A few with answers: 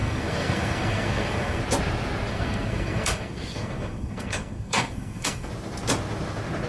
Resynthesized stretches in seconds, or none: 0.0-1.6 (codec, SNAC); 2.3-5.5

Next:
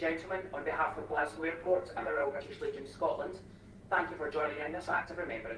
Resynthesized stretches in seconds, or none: 0.9-2.4 (codec, SNAC); 4.4-5.1